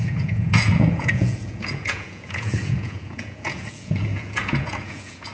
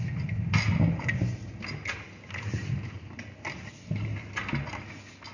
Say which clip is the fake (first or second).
first